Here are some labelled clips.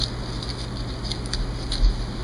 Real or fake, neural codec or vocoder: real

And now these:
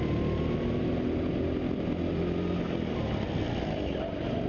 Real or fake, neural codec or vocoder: real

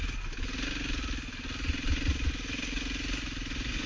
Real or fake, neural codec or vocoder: real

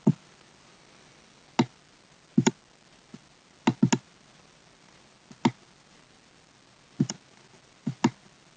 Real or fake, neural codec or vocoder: real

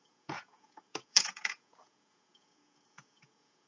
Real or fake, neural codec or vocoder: fake, vocoder, Vocos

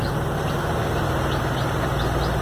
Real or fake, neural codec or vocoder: real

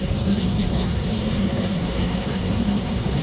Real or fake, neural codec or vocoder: fake, codec, SNAC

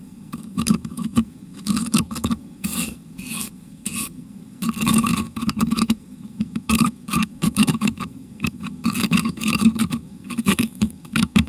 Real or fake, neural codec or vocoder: fake, codec, SNAC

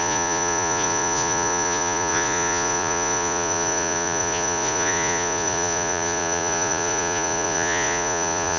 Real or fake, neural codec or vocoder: fake, vocoder, Vocos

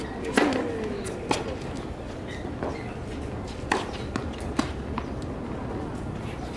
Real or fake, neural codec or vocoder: real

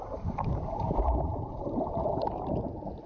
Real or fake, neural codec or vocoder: fake, vocoder, BigVGAN v2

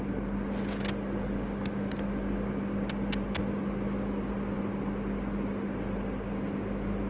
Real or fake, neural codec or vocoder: real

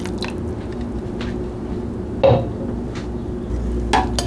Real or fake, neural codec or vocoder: real